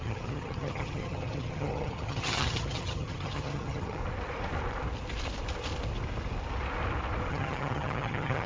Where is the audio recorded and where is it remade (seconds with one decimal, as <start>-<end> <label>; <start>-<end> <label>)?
0.0-4.0 remade; 4.0-7.3 recorded; 7.3-8.5 remade